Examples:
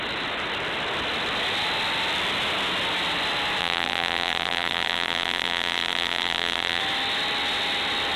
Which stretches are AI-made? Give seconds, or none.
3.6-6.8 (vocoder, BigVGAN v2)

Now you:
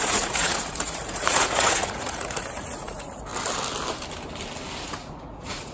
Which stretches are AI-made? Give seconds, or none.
0.0-3.3 (vocoder, Vocos); 4.8-5.7

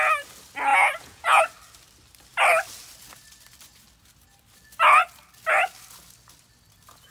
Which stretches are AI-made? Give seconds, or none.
0.7-1.4 (vocoder, Vocos)

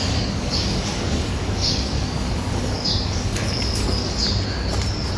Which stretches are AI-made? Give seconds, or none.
0.0-4.2 (codec, DAC)

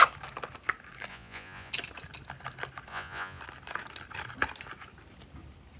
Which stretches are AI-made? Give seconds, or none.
1.1-1.7 (vocoder, Vocos); 2.9-3.4

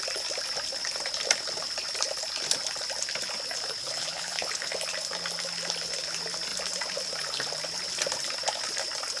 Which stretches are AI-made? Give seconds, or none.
3.8-4.7 (codec, HILCodec)

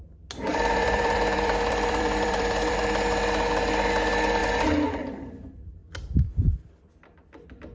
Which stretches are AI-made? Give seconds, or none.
0.5-2.8 (vocoder, BigVGAN v2); 4.4-5.0